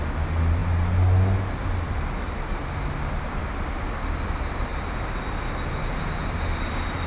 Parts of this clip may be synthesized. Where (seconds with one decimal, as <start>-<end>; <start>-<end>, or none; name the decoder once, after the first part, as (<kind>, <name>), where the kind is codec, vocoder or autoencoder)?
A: none